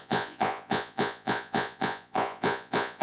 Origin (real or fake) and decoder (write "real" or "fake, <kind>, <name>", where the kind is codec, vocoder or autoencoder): fake, vocoder, Vocos